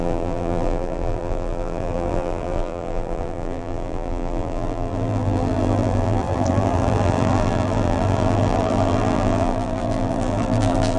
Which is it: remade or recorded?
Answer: remade